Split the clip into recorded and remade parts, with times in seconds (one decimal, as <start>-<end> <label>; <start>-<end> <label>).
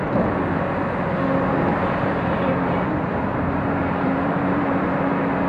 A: 0.0-1.7 recorded; 1.7-5.0 remade; 5.0-5.5 recorded